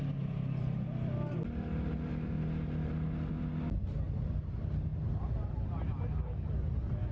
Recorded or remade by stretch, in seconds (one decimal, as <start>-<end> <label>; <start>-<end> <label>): 0.0-7.1 recorded

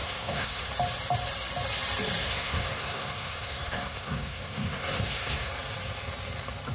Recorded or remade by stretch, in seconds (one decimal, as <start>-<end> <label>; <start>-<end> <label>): 0.0-0.7 remade; 0.7-2.2 recorded; 2.2-5.5 remade; 5.5-6.7 recorded

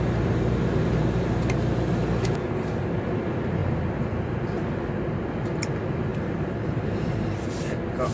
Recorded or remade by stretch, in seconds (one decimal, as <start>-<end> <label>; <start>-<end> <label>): 0.0-6.1 recorded; 6.1-7.3 remade; 7.3-8.1 recorded

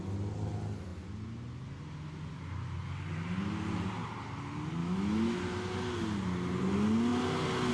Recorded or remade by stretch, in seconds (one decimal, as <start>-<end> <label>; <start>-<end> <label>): 0.0-4.8 recorded; 4.8-5.4 remade; 5.4-7.7 recorded

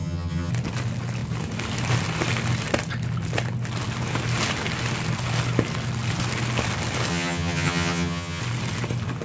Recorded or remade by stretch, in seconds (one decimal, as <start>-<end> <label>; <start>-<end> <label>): 0.0-0.5 remade; 0.5-7.1 recorded; 7.1-8.4 remade; 8.4-9.2 recorded